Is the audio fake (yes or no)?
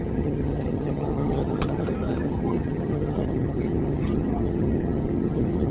yes